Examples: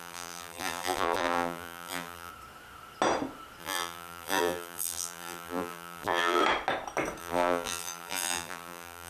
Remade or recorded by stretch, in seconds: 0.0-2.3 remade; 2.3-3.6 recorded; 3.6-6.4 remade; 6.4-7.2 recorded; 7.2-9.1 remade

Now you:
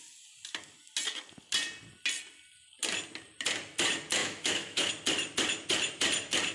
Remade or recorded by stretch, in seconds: 0.0-4.2 recorded; 4.2-4.9 remade; 4.9-6.5 recorded

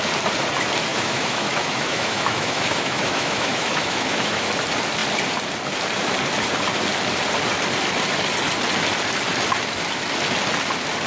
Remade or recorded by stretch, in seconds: 0.0-0.9 recorded; 0.9-4.5 remade; 4.5-11.1 recorded

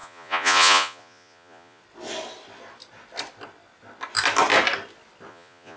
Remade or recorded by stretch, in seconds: 0.0-1.8 remade; 1.8-5.3 recorded; 5.3-5.8 remade

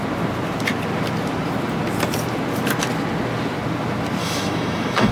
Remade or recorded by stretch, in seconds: 0.0-4.2 recorded; 4.2-5.1 remade

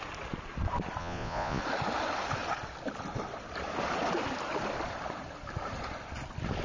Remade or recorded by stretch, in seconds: 0.0-1.0 recorded; 1.0-1.6 remade; 1.6-6.6 recorded

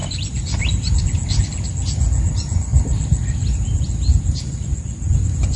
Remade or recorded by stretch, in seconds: 0.0-5.6 recorded

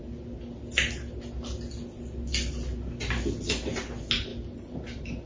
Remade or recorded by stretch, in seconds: 0.0-4.3 recorded; 4.3-5.3 remade